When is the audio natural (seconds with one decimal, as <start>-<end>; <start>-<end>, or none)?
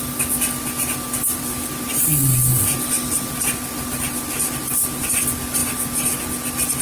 0.0-6.8